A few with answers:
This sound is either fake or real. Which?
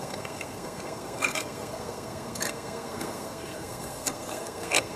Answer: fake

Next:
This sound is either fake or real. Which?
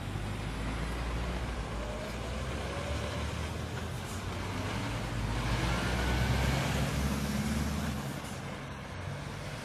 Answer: real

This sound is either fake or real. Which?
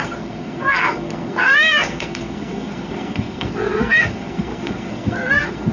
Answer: fake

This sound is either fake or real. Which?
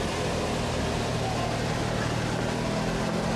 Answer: real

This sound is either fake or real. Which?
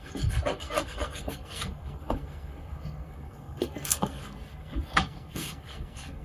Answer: fake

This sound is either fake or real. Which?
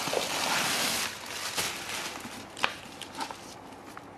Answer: real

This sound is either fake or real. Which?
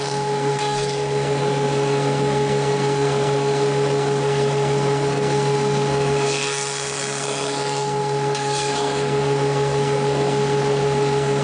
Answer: fake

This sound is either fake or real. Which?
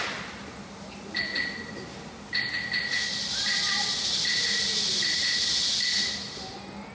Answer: real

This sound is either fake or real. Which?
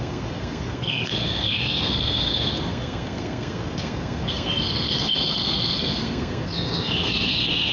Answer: fake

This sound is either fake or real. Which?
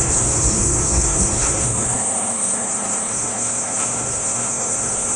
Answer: fake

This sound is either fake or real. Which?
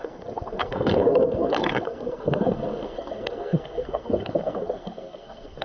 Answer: fake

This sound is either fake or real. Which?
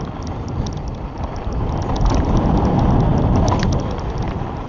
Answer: real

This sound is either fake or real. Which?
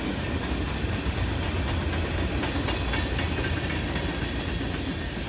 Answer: real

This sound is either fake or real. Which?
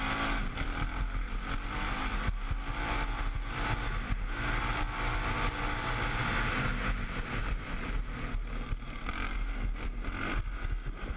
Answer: real